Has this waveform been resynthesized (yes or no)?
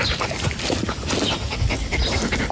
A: no